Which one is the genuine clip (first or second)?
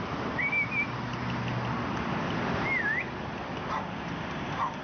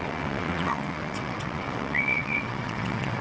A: first